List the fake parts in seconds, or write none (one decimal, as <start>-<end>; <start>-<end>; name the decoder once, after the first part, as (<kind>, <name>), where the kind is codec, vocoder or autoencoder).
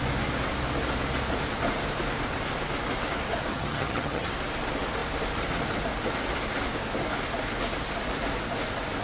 3.5-4.3 (vocoder, HiFi-GAN)